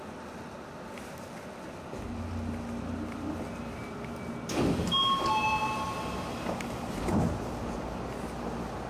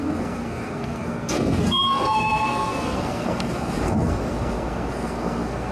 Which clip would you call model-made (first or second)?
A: second